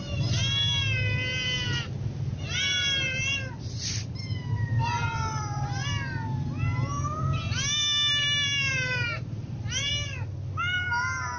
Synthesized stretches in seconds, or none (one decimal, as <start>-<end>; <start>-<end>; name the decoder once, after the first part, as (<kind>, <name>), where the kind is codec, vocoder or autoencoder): 8.7-9.9 (vocoder, BigVGAN v2)